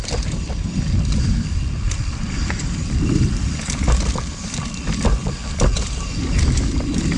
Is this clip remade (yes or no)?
yes